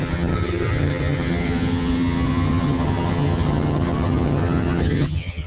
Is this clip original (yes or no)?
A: no